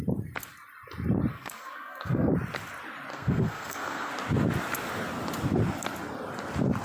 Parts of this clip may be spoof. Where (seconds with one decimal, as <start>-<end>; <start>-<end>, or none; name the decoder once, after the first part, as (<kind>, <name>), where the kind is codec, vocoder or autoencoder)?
1.3-2.3 (codec, SNAC); 3.1-4.1